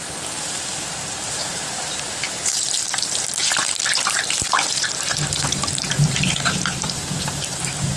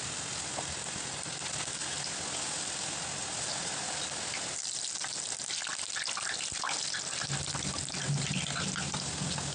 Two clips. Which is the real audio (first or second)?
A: second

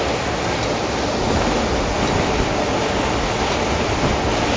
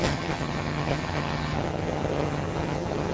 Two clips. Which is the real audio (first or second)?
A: first